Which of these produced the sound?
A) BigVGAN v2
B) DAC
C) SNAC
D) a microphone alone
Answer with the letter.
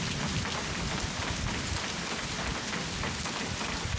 D